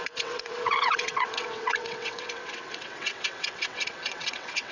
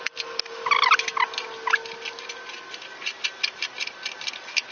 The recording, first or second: second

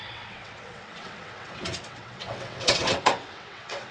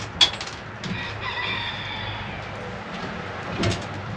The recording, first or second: second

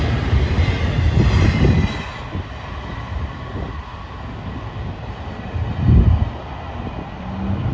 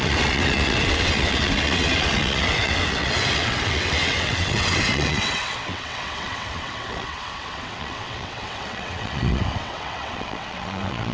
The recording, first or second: first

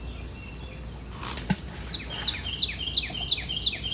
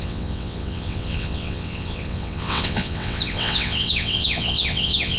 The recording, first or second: first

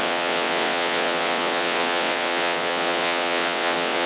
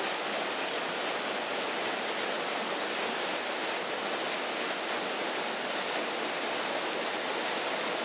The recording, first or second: second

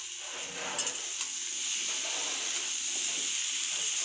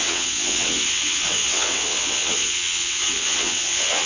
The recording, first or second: first